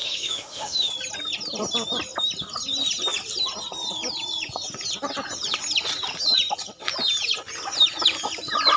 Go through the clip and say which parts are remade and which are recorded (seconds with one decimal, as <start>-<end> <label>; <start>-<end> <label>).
0.0-0.9 remade; 0.9-8.8 recorded